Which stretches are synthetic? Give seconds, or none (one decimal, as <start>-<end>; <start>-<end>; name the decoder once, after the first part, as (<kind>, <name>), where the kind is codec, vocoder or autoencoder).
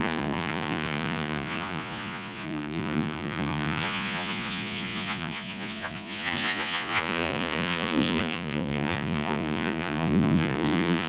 0.0-11.1 (vocoder, Vocos)